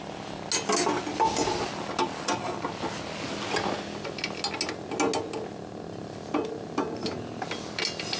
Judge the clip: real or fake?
real